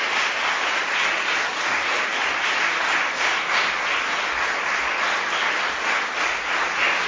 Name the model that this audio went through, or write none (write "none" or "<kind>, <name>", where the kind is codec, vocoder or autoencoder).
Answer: none